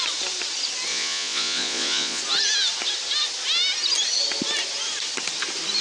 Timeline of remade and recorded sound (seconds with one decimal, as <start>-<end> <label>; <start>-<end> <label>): 0.0-0.9 recorded; 0.9-2.2 remade; 2.2-5.8 recorded